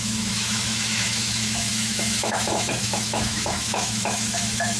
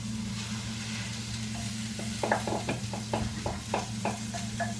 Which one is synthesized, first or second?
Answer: first